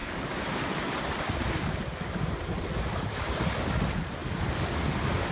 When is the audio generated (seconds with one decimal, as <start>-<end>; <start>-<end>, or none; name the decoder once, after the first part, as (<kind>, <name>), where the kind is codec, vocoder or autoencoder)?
none